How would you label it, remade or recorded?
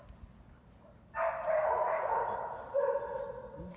recorded